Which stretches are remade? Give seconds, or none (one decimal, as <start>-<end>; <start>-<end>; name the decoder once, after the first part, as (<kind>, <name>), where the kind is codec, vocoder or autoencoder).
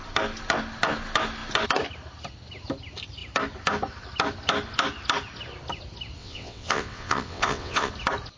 6.2-7.9 (vocoder, WaveNeXt)